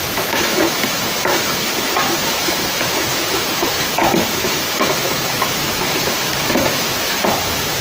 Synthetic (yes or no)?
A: yes